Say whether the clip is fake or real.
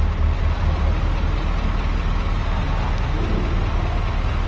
real